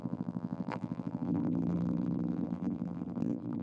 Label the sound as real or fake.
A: fake